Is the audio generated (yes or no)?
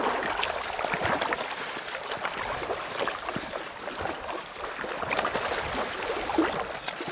no